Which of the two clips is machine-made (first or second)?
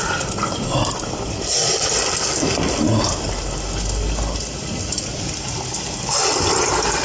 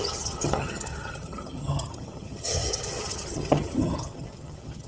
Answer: second